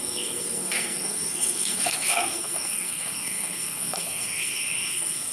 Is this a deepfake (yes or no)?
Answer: yes